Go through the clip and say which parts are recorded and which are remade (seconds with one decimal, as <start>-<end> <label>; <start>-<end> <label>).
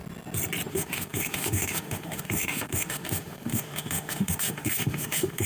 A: 0.0-0.7 recorded; 0.7-5.5 remade